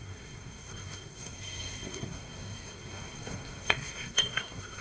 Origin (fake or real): fake